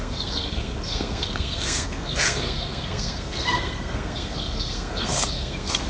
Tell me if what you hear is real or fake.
fake